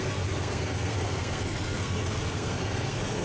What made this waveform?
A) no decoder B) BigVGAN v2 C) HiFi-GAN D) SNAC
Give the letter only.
D